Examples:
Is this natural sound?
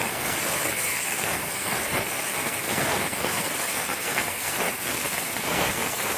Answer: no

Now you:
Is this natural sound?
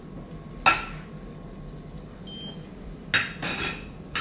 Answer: yes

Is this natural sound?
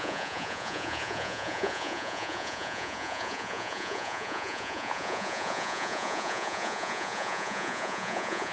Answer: no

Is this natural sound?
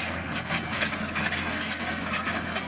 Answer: no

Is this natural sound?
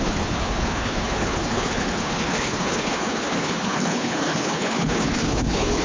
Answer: no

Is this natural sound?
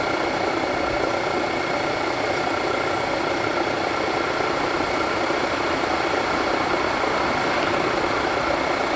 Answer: no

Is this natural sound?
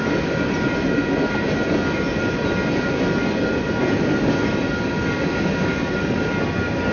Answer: yes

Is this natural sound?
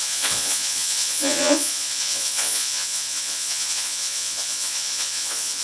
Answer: no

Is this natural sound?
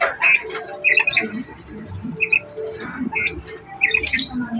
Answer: yes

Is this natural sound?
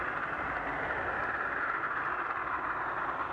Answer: yes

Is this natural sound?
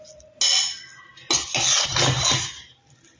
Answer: yes